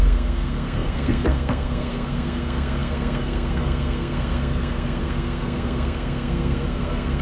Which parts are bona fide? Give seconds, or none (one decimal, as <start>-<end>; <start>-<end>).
none